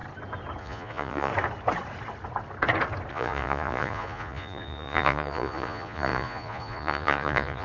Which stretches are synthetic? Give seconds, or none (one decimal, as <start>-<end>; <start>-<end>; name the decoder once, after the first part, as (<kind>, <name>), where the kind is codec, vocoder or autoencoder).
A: 0.6-1.3 (vocoder, Vocos); 3.1-7.6